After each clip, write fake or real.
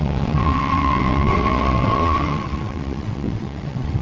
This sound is fake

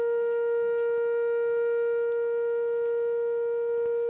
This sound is real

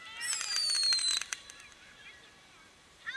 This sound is fake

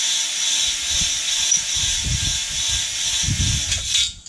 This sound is real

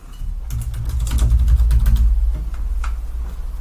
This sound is real